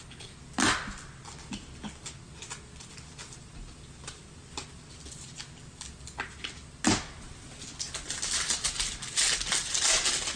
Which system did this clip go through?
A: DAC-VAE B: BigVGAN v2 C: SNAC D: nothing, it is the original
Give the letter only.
D